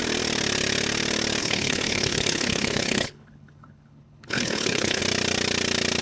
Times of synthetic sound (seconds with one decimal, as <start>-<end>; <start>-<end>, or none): 1.4-5.0